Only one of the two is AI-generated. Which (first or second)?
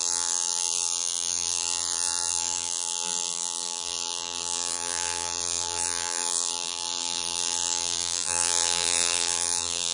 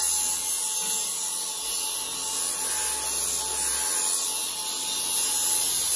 first